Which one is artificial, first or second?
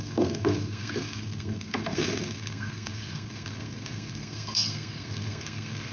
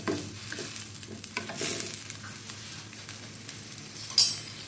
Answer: first